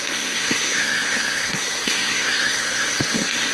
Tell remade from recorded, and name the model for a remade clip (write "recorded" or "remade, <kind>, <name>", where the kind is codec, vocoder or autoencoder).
remade, codec, SNAC